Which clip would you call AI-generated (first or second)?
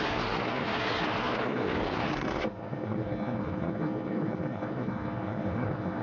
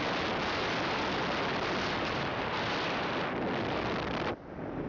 first